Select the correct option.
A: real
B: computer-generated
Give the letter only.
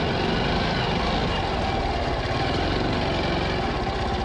A